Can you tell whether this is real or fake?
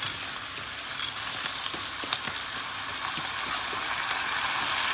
real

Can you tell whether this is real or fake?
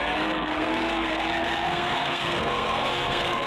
fake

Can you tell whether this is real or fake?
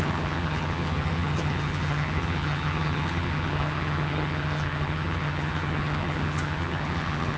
fake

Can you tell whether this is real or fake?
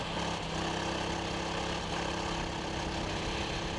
real